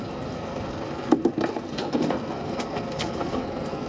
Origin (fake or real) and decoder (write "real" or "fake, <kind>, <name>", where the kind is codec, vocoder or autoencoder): fake, codec, SNAC